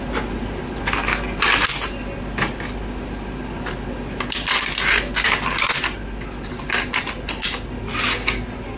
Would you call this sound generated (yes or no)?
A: no